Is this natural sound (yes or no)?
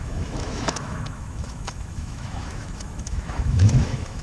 no